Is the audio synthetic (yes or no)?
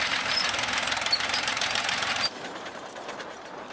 yes